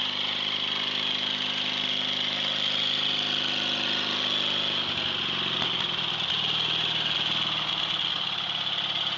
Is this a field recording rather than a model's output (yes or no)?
yes